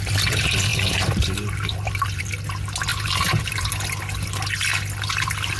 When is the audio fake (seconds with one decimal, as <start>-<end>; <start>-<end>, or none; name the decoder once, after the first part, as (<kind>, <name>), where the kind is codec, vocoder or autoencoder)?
0.7-2.2 (vocoder, BigVGAN v2); 2.9-3.7